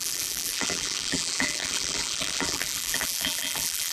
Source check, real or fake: fake